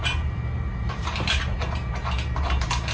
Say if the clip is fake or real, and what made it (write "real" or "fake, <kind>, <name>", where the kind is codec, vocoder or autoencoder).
fake, vocoder, BigVGAN v2